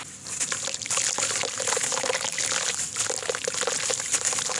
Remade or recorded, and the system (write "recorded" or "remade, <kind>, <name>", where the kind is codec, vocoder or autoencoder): recorded